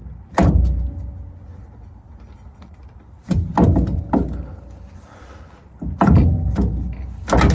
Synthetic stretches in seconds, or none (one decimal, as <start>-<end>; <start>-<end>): none